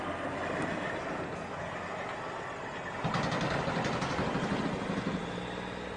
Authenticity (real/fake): real